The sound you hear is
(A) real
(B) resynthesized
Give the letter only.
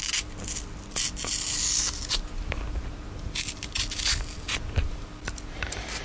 A